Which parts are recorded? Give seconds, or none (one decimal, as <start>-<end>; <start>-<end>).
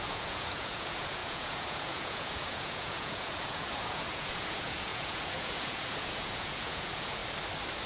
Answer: 7.2-7.9